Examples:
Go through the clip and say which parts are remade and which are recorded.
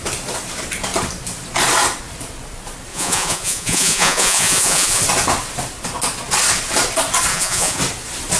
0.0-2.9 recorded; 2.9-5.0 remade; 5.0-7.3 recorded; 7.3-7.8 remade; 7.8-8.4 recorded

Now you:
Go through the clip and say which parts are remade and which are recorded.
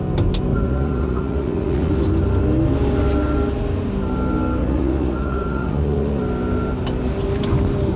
0.0-0.5 recorded; 0.5-1.9 remade; 1.9-4.6 recorded; 4.6-6.2 remade; 6.2-8.0 recorded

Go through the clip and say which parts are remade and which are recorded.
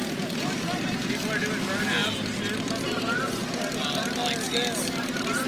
0.0-5.5 recorded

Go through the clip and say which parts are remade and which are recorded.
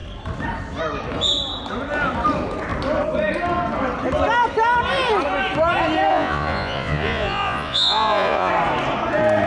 0.0-6.1 recorded; 6.1-8.5 remade; 8.5-9.5 recorded